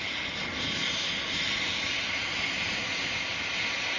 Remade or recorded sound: recorded